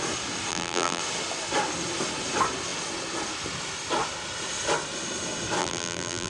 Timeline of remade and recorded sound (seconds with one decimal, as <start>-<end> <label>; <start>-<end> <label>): 0.0-0.5 recorded; 0.5-1.0 remade; 1.0-5.6 recorded; 5.6-6.3 remade